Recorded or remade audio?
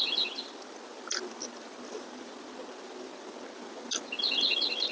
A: recorded